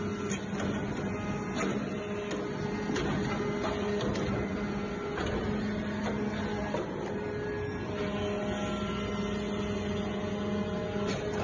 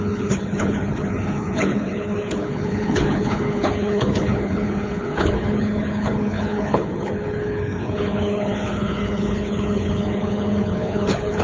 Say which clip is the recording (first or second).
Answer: first